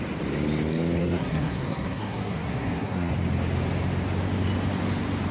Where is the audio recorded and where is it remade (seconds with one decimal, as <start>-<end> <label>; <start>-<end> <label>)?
0.0-1.0 recorded; 1.0-3.1 remade; 3.1-5.3 recorded